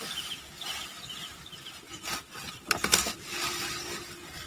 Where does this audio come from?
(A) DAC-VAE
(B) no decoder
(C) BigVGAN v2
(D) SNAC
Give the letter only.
B